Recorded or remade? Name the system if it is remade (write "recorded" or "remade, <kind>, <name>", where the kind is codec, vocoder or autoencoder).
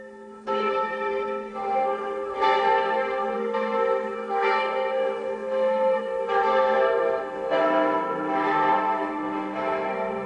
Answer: remade, codec, SNAC